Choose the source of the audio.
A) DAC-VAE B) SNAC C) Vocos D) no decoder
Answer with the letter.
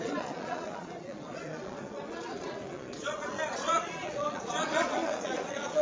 C